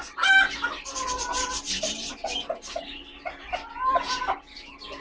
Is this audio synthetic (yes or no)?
no